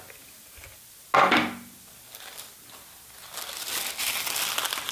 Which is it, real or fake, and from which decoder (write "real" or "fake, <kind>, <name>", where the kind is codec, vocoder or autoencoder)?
real